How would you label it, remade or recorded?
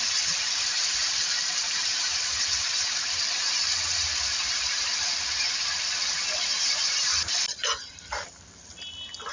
remade